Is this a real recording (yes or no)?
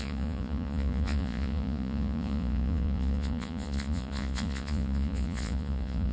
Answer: no